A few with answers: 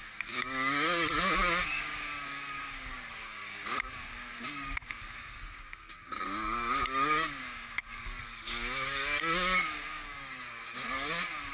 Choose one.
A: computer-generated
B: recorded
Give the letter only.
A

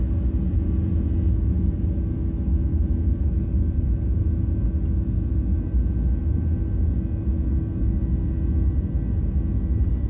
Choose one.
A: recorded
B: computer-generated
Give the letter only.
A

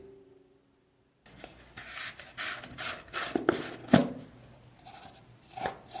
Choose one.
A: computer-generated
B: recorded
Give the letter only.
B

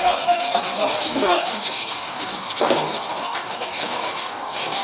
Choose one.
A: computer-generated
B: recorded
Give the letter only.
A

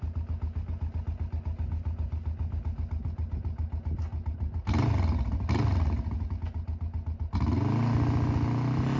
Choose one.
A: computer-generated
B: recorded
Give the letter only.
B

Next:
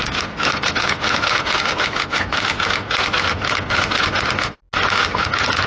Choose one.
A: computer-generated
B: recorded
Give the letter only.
B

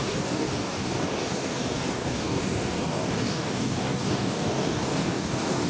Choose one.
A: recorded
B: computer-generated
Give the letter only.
B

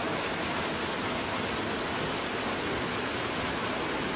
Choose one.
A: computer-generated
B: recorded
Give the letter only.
B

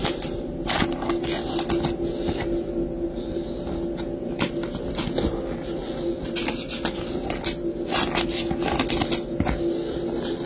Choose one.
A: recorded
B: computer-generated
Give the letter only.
A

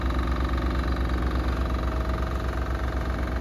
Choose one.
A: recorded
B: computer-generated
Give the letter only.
A